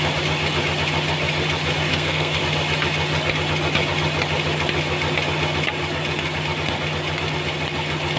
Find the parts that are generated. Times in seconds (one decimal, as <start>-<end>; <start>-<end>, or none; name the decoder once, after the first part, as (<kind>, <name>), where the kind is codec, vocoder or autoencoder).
1.9-2.4 (codec, SNAC)